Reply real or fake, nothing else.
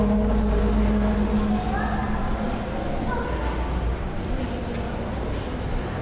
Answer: real